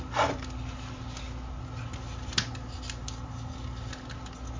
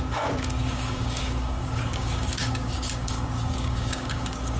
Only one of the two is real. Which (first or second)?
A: first